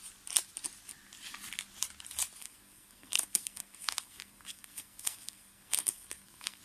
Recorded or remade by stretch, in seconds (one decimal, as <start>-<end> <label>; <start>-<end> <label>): 0.0-2.4 recorded; 2.4-6.6 remade

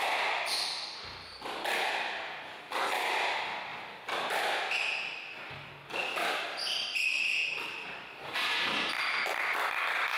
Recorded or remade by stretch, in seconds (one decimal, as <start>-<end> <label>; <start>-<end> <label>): 0.0-10.2 remade

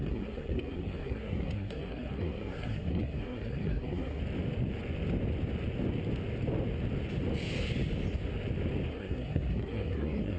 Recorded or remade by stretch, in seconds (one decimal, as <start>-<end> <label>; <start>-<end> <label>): 0.0-4.2 remade; 4.2-8.9 recorded; 8.9-10.4 remade

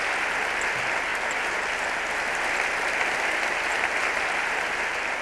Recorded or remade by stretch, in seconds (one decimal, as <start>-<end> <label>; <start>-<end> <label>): 0.0-5.2 recorded

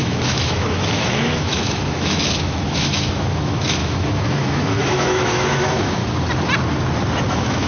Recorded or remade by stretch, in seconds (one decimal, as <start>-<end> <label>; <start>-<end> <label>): 0.0-6.0 remade; 6.0-7.3 recorded; 7.3-7.7 remade

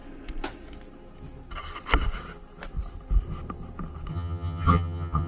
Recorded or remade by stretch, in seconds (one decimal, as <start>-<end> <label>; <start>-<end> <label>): 0.0-4.1 recorded; 4.1-5.3 remade

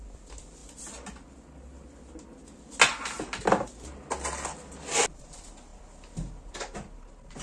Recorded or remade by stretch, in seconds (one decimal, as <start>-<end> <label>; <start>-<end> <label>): 0.0-7.4 recorded